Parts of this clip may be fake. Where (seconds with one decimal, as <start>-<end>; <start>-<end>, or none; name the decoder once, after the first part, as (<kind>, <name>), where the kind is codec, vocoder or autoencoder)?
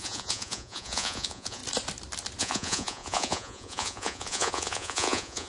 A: 0.0-1.6 (vocoder, Vocos); 2.4-5.5